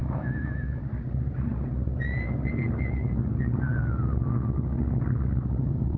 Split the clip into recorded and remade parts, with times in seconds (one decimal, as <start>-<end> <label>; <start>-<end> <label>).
0.0-0.8 remade; 0.8-6.0 recorded